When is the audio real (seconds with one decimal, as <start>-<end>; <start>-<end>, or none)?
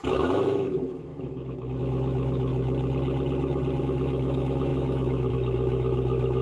2.5-3.8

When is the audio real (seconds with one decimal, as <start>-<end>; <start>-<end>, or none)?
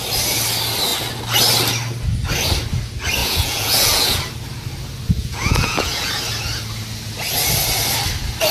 0.0-3.2; 4.2-5.2; 6.1-8.5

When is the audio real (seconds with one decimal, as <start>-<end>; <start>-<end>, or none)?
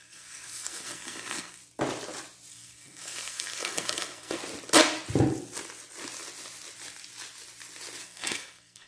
1.6-2.5; 4.4-8.0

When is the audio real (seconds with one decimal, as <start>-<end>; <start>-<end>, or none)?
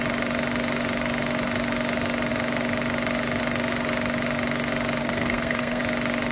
0.0-5.0; 5.8-6.3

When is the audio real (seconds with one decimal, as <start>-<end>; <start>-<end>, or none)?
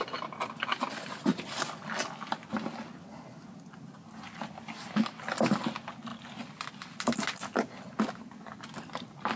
0.0-9.4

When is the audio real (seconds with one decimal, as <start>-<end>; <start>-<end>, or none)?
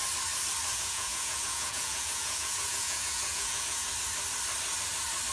0.0-0.7; 3.9-5.3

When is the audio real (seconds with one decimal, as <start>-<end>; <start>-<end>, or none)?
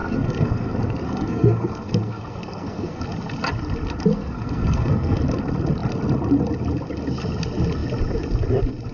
3.0-4.1; 5.2-8.9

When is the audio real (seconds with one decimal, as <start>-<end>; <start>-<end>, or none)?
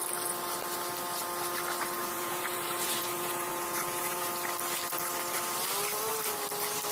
0.0-2.0; 4.3-6.9